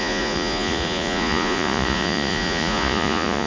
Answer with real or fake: fake